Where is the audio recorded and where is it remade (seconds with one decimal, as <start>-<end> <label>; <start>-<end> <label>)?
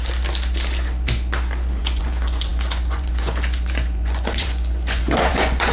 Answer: 0.0-1.8 recorded; 1.8-5.7 remade